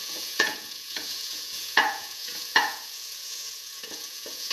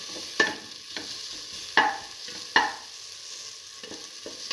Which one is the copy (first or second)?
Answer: first